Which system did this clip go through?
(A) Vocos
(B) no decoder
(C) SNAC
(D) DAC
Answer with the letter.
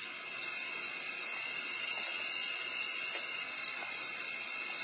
B